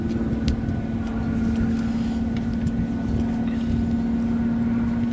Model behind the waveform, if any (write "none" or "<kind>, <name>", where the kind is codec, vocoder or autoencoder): none